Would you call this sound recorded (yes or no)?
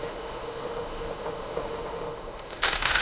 no